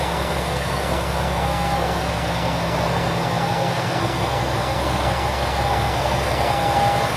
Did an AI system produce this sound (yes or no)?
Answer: yes